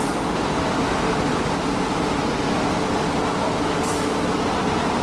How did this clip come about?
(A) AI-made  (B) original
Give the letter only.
B